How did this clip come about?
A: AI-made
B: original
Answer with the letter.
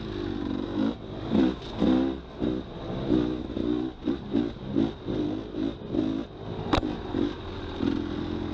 B